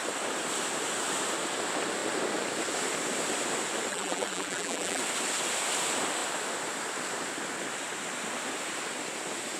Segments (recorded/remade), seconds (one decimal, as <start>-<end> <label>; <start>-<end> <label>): 0.0-3.9 recorded; 3.9-5.0 remade; 5.0-9.6 recorded